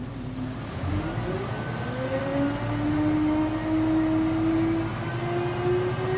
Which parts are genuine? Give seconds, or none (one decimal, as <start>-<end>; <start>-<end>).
0.0-6.2